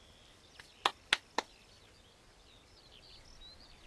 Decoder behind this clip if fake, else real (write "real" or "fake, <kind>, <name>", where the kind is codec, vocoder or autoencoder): real